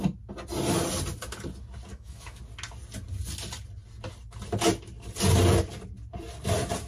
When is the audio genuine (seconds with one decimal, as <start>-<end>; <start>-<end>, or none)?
0.0-1.9; 2.4-6.9